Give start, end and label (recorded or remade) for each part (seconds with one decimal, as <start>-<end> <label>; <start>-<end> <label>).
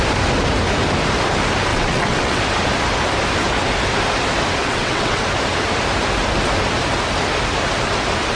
0.0-1.7 recorded; 1.7-2.4 remade; 2.4-4.6 recorded; 4.6-5.2 remade; 5.2-8.4 recorded